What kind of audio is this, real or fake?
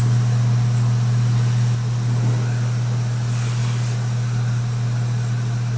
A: real